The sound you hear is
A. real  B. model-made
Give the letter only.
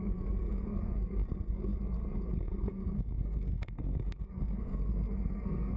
B